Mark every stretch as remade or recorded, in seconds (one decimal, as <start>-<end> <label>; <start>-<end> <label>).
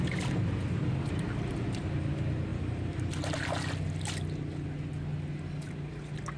0.0-6.4 recorded